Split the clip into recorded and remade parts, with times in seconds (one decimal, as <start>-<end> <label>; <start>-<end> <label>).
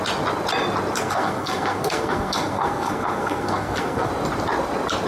0.0-1.0 recorded; 1.0-4.1 remade; 4.1-5.1 recorded